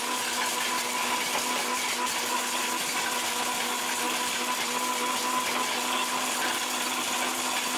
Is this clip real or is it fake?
real